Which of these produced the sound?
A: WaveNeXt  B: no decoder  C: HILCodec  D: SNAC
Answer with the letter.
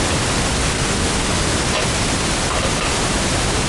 B